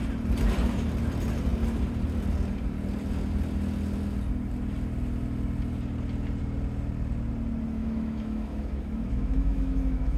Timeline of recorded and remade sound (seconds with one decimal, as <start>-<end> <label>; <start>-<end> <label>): 0.0-7.8 recorded; 7.8-10.2 remade

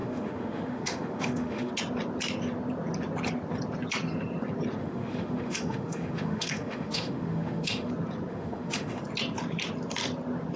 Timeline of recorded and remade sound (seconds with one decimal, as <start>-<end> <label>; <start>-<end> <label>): 0.0-1.7 remade; 1.7-4.8 recorded; 4.8-7.9 remade; 7.9-8.3 recorded; 8.3-9.0 remade; 9.0-10.6 recorded

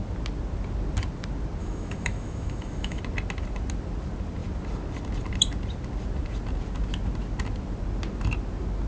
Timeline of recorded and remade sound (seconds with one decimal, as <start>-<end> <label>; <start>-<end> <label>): 0.0-1.6 recorded; 1.6-3.0 remade; 3.0-8.9 recorded